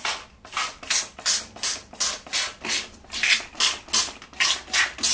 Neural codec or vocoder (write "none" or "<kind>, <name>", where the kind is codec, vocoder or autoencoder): none